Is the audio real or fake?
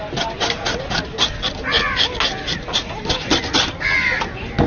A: real